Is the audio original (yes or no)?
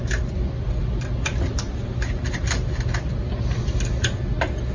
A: yes